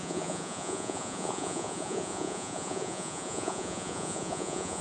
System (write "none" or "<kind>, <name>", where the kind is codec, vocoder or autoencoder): vocoder, Vocos